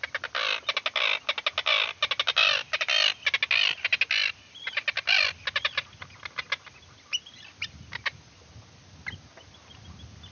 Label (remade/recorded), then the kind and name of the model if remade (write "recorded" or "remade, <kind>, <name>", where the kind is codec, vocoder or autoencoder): recorded